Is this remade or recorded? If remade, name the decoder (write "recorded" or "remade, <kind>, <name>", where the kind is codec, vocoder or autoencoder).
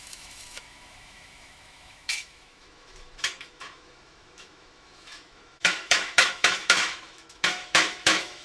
remade, autoencoder, DAC-VAE